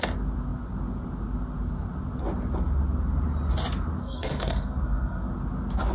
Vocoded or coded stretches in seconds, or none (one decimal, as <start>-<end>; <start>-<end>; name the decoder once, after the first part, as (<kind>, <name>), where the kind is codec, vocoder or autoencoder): 4.0-5.3 (codec, SNAC)